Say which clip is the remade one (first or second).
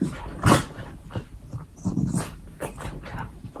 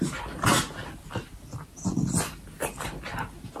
first